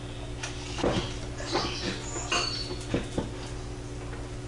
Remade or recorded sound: recorded